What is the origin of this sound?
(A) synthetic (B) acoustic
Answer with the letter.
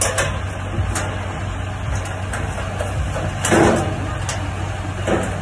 B